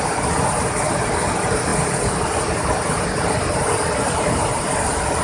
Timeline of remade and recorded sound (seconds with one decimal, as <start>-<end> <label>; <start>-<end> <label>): 0.0-5.2 recorded